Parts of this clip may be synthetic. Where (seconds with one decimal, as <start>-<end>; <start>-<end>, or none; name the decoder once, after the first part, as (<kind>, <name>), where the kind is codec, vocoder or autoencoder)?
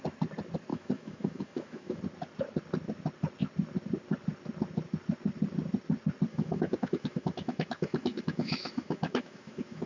0.7-2.0 (autoencoder, DAC-VAE); 6.3-9.9